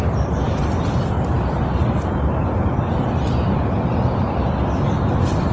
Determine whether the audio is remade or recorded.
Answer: recorded